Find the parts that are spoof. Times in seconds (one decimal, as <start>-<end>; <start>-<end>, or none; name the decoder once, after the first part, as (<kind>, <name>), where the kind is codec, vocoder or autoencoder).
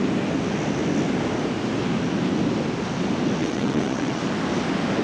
3.4-4.2 (vocoder, WaveNeXt)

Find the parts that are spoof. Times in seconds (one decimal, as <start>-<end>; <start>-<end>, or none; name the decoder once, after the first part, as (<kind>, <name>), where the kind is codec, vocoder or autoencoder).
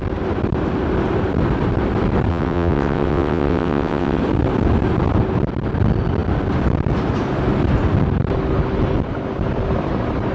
2.3-4.2 (vocoder, WaveNeXt)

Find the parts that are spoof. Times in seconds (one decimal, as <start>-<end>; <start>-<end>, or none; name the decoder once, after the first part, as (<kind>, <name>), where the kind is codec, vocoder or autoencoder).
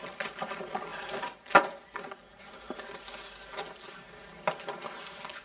none